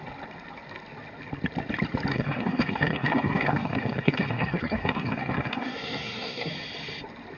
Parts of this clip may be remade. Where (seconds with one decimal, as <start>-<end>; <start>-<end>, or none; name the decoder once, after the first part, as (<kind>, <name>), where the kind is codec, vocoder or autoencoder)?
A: 2.1-6.5 (codec, SNAC)